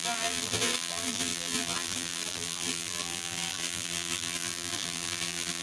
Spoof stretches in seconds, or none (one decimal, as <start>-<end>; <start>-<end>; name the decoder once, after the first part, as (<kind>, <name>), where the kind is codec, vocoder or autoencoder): 0.0-5.6 (vocoder, BigVGAN v2)